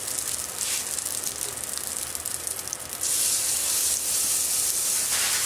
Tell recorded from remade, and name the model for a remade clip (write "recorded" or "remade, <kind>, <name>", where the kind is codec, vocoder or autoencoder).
recorded